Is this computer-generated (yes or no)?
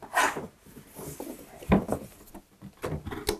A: no